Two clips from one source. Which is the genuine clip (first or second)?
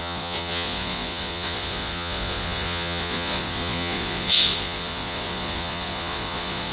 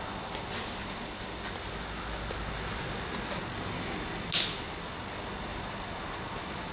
second